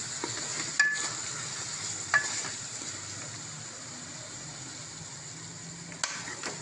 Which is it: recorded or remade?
recorded